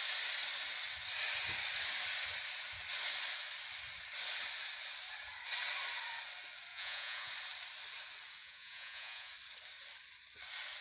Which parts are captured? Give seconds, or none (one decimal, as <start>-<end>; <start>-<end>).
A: 0.0-6.7; 7.3-8.4; 9.3-10.8

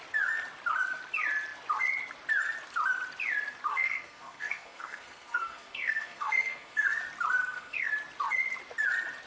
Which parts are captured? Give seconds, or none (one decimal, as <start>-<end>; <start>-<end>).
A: 0.0-3.7; 7.0-7.4; 7.9-9.3

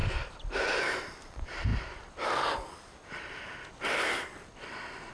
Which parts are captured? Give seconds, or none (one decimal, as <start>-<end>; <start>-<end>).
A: 0.0-0.5; 1.7-5.1

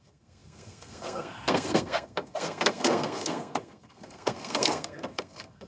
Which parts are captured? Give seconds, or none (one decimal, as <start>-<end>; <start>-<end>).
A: none

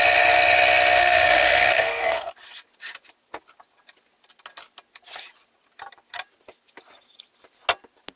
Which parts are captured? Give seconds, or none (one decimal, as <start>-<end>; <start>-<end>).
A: 0.0-1.0; 2.3-8.2

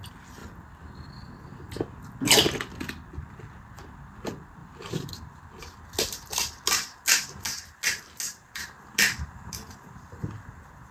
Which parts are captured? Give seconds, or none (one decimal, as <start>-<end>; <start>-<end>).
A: 0.0-4.6; 5.1-10.9